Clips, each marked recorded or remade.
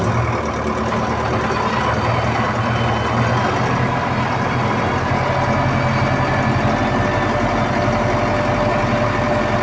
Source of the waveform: recorded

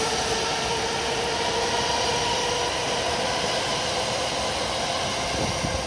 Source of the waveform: recorded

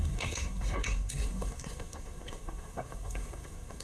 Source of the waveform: remade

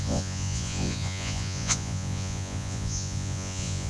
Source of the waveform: remade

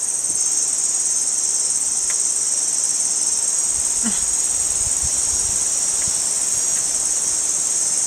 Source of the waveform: recorded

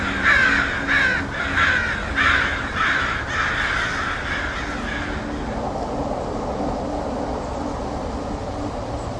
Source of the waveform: recorded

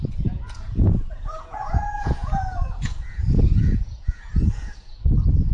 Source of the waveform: remade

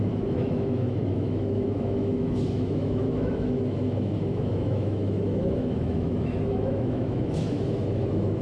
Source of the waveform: remade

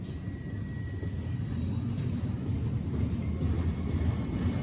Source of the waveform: recorded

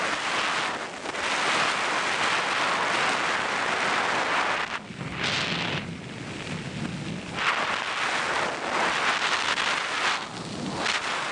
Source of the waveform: recorded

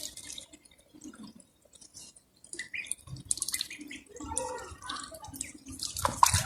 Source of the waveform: recorded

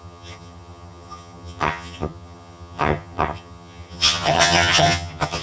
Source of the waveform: remade